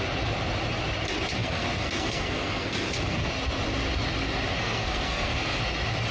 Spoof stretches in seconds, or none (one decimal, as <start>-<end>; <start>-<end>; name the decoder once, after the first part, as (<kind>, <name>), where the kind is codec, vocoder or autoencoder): 1.4-3.3 (codec, SNAC); 4.6-5.6